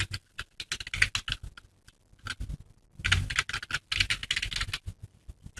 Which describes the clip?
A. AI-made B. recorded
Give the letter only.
B